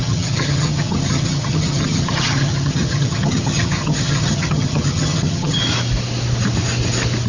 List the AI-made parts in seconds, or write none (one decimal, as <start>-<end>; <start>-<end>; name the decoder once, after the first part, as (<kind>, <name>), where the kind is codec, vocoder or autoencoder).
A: 0.0-5.6 (vocoder, HiFi-GAN)